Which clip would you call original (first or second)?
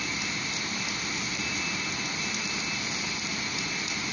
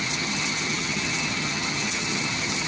first